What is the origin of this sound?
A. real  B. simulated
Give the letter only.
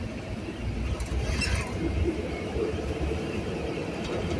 B